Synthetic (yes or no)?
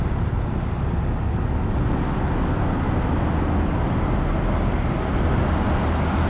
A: no